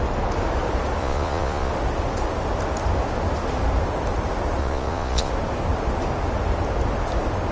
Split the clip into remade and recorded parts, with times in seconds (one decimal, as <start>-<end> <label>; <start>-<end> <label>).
0.0-1.0 recorded; 1.0-1.7 remade; 1.7-4.6 recorded; 4.6-5.3 remade; 5.3-7.5 recorded

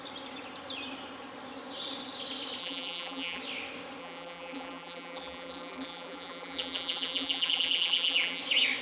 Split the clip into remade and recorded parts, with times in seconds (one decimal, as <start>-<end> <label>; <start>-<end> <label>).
0.0-2.6 recorded; 2.6-3.4 remade; 3.4-4.0 recorded; 4.0-8.4 remade; 8.4-8.8 recorded

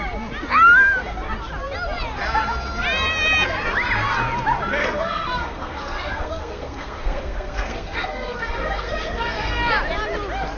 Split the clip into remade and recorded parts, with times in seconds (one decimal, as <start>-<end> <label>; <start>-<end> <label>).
0.0-4.8 recorded; 4.8-9.7 remade; 9.7-10.6 recorded

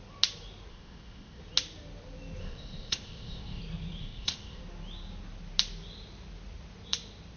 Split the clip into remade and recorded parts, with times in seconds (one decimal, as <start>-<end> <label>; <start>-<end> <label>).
0.0-0.7 recorded; 0.7-1.4 remade; 1.4-2.4 recorded; 2.4-3.6 remade; 3.6-4.0 recorded; 4.0-4.6 remade; 4.6-7.4 recorded

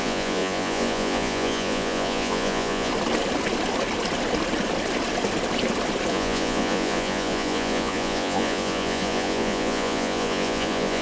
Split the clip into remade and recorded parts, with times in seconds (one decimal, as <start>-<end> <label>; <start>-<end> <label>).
0.0-2.9 remade; 2.9-6.1 recorded; 6.1-11.0 remade